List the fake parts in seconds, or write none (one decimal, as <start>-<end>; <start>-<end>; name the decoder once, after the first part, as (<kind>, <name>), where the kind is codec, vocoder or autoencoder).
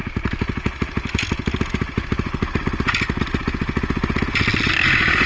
none